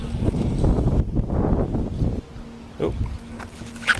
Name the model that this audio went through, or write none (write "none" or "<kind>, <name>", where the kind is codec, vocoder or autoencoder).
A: none